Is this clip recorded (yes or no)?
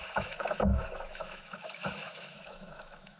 no